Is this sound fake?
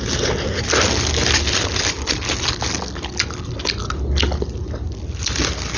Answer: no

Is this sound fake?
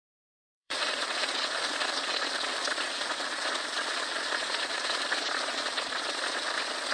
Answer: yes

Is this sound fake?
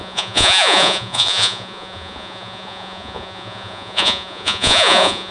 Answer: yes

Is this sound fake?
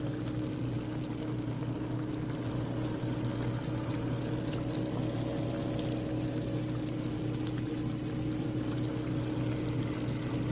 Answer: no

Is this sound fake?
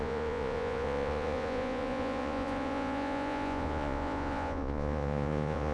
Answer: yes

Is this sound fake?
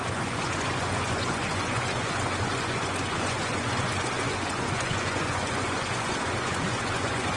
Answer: yes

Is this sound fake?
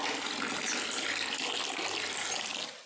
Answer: no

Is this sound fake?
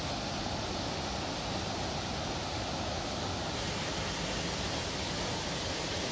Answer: no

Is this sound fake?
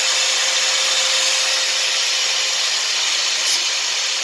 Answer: no